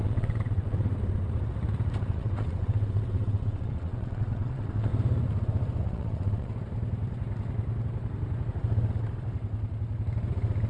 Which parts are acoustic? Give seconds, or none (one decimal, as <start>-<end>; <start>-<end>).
0.9-2.0; 4.9-5.8; 6.5-10.7